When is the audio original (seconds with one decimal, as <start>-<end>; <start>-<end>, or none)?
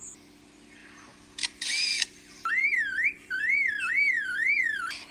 0.0-5.1